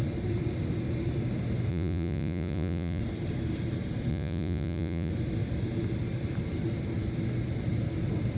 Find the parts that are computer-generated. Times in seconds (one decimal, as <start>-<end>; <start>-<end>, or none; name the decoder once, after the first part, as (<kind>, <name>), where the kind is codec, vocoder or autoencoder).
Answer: 1.7-3.0 (vocoder, Vocos); 4.1-5.1